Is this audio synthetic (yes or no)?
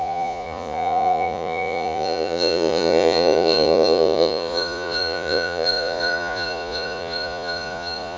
yes